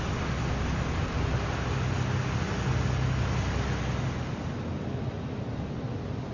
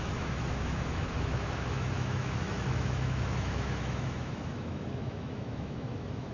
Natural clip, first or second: first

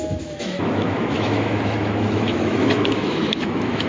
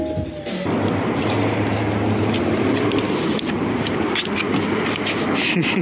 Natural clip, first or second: second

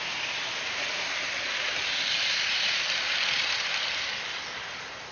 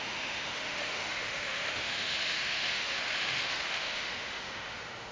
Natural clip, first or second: first